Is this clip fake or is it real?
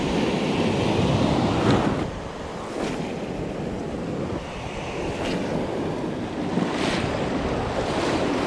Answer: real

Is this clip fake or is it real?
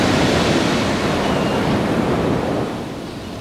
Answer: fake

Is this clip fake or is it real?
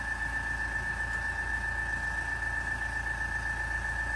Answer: real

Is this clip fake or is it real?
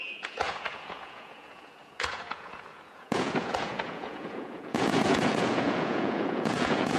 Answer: fake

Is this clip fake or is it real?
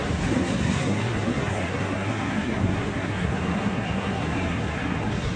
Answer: fake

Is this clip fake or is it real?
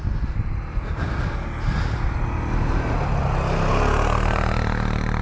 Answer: real